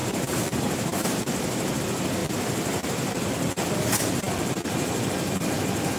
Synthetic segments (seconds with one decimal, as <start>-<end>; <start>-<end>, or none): 0.0-1.8; 2.2-3.3